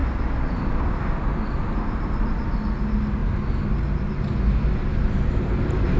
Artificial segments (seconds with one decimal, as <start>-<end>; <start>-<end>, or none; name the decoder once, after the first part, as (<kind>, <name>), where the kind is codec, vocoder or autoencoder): none